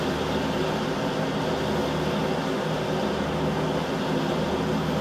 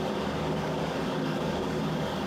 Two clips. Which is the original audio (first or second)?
first